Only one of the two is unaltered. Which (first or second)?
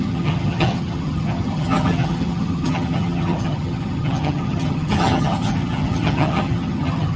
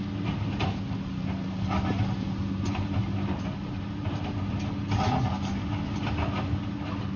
second